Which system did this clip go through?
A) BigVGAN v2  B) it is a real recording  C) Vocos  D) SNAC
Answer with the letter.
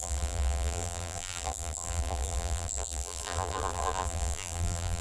A